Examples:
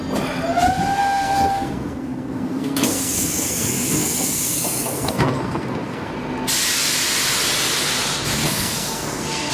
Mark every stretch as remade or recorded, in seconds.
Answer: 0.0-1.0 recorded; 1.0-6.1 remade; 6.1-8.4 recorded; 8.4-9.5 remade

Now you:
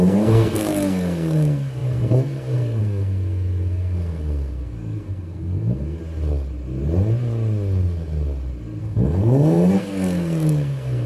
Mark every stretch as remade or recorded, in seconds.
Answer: 0.0-6.0 remade; 6.0-8.8 recorded; 8.8-11.1 remade